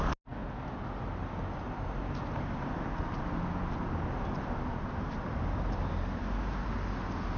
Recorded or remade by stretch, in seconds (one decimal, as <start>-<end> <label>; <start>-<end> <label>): 0.0-4.7 recorded; 4.7-6.0 remade; 6.0-7.4 recorded